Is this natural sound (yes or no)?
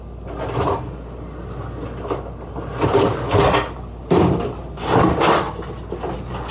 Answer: yes